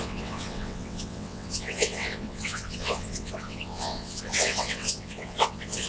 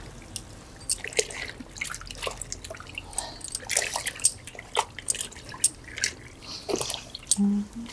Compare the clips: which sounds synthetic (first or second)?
first